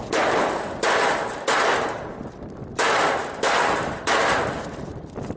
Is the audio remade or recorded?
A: recorded